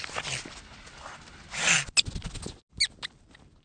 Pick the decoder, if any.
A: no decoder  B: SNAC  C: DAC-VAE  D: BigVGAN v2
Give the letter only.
A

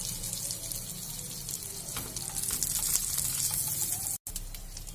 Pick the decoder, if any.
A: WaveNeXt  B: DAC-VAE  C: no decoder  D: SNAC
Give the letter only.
C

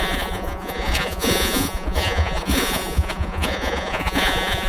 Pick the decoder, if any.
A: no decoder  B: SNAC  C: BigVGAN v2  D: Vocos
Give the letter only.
D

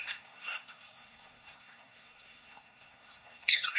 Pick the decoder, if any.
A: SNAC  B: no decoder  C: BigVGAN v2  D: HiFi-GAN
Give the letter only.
A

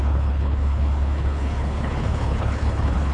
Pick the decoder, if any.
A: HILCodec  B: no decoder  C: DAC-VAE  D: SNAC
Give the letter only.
A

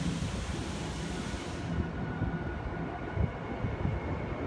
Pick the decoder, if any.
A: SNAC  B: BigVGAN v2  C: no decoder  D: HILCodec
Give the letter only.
C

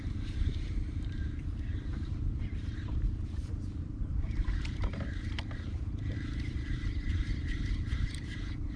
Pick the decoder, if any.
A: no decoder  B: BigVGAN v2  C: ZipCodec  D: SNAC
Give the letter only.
B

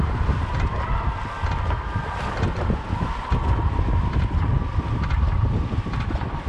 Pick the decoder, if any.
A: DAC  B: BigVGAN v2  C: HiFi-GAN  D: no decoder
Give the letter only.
D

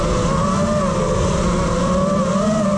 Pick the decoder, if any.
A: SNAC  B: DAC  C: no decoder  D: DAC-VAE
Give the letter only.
C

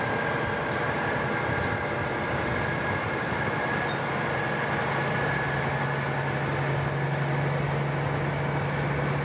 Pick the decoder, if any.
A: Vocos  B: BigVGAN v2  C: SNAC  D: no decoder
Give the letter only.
D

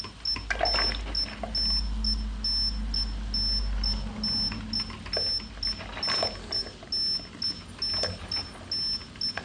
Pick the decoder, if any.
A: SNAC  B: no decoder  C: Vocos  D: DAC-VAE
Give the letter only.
B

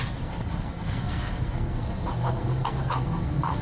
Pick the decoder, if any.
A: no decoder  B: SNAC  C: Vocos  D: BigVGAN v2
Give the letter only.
B